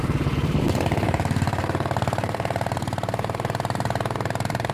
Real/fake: fake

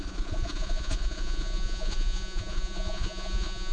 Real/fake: fake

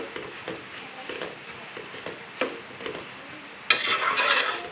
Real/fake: real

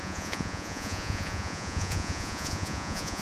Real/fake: fake